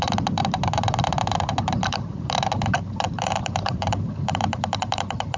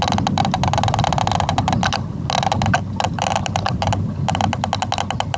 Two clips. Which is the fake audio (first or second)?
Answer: first